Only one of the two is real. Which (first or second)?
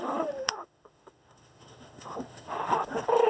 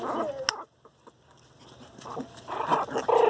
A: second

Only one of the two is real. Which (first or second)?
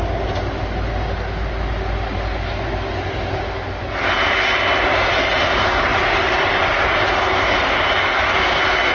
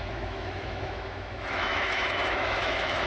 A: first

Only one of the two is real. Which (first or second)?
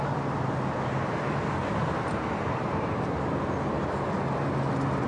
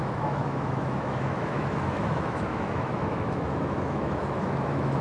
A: first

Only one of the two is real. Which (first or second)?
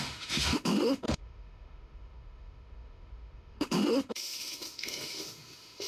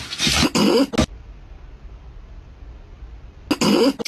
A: second